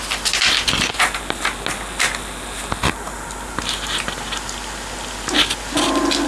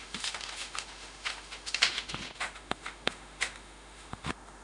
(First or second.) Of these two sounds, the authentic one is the first